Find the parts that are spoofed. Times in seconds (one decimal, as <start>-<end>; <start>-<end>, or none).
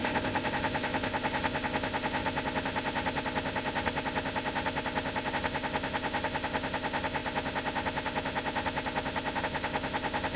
0.0-10.4